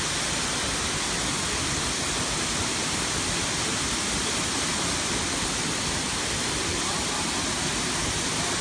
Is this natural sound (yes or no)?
yes